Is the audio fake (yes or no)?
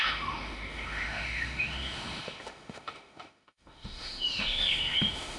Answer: yes